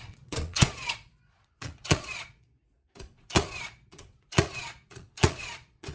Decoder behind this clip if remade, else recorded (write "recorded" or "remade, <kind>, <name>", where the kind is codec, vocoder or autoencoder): remade, vocoder, Vocos